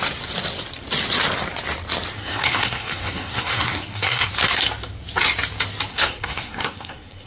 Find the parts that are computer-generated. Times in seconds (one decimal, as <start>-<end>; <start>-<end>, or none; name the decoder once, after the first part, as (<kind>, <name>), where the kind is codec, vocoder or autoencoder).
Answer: 2.2-4.3 (codec, SNAC); 5.9-7.3